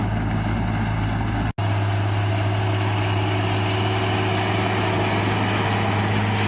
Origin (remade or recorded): recorded